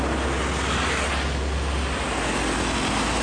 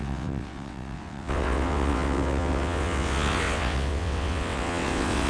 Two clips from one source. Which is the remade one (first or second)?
second